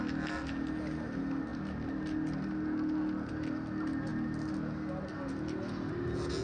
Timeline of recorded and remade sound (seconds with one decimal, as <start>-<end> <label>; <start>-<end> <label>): 0.0-6.4 recorded